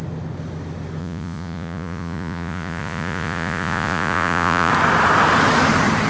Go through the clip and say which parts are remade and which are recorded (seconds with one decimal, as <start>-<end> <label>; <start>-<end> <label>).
0.0-1.0 recorded; 1.0-4.7 remade; 4.7-6.1 recorded

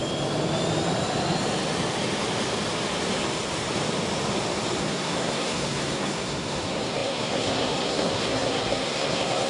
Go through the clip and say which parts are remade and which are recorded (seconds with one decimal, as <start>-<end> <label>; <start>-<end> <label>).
0.0-4.8 recorded; 4.8-9.5 remade